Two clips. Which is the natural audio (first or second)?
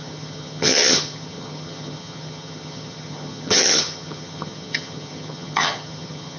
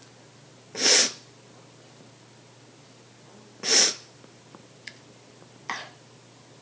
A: second